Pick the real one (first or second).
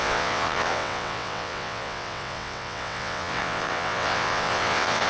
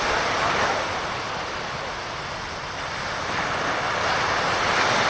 second